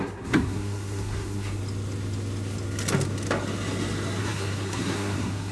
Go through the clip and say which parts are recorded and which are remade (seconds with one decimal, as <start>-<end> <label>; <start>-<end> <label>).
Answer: 0.0-1.6 remade; 1.6-4.2 recorded; 4.2-5.5 remade